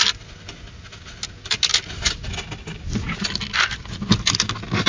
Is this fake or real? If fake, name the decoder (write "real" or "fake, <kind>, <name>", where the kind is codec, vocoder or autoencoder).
real